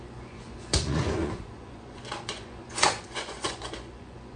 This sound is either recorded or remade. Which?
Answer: remade